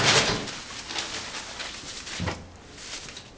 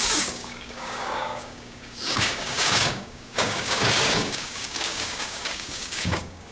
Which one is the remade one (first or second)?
second